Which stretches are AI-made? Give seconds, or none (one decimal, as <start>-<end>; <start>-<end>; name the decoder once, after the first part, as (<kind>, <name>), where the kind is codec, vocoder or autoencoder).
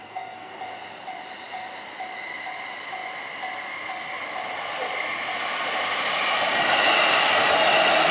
0.0-0.5 (codec, SNAC)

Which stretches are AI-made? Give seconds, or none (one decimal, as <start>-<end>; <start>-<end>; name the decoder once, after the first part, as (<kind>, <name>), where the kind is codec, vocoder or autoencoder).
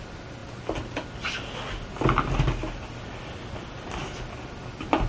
none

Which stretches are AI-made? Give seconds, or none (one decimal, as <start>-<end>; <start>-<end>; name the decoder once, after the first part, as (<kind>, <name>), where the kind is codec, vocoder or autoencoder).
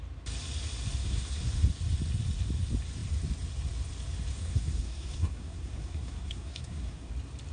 1.0-1.5 (codec, SNAC); 4.3-7.1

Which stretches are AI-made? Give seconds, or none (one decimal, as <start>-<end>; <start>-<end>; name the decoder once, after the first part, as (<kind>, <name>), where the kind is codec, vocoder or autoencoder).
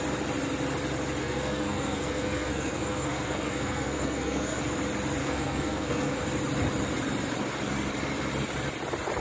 1.2-4.6 (codec, SNAC); 5.2-6.2